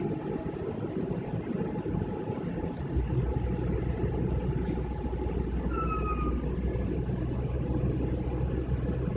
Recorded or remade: recorded